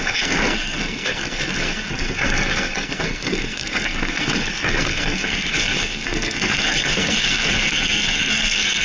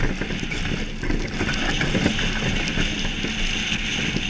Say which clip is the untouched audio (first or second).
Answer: second